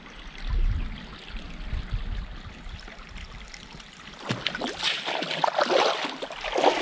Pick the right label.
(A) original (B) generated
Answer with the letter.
A